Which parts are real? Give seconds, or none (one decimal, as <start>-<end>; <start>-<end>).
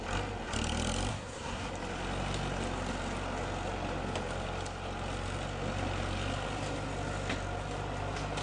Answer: 0.0-1.1; 1.7-8.4